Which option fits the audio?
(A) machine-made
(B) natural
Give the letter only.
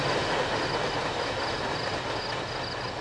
B